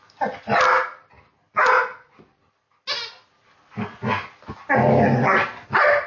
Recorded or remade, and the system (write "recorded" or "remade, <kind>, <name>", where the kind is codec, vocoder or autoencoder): recorded